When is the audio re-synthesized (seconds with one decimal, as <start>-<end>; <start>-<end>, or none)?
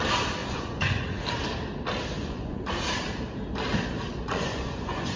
0.4-1.2; 2.2-2.7; 4.2-5.2